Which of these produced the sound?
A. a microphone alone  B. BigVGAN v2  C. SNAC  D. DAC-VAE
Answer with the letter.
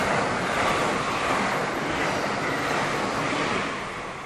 A